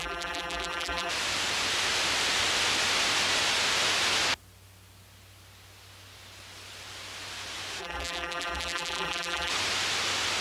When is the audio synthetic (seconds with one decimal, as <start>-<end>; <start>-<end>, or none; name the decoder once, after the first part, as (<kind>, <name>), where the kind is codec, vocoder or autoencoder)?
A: 0.0-1.1 (vocoder, BigVGAN v2); 7.8-9.5